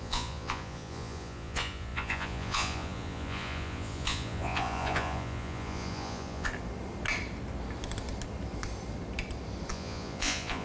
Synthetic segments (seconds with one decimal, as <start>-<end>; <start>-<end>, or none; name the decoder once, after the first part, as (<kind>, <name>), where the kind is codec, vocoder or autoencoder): 0.0-6.5 (vocoder, Vocos); 9.7-10.6